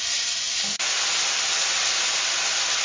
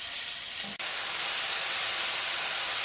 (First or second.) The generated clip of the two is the second